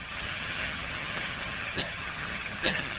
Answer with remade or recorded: remade